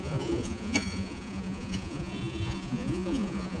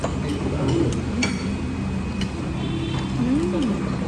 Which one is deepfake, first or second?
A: first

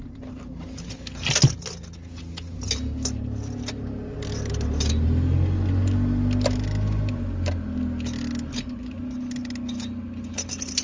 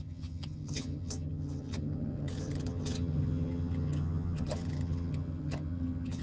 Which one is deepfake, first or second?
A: second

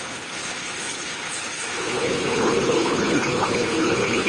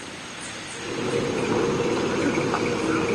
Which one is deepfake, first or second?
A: first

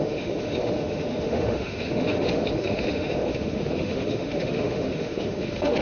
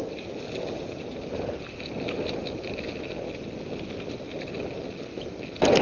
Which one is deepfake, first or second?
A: first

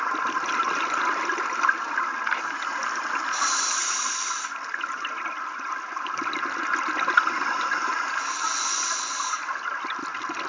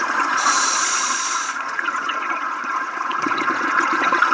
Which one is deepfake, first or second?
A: second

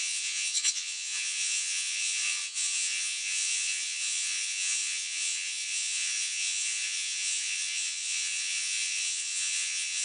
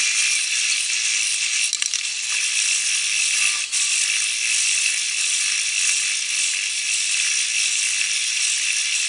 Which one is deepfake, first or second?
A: first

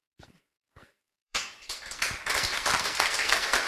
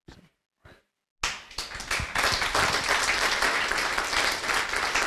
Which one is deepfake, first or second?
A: first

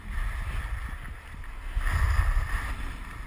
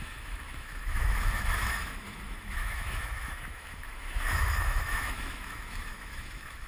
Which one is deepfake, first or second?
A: second